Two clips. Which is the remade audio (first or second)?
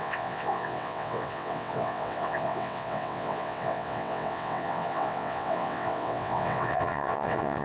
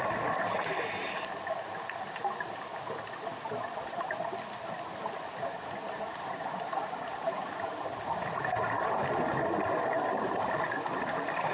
first